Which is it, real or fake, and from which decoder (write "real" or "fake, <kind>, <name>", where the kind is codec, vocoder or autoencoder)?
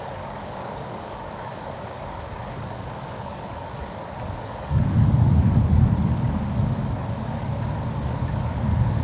fake, codec, DAC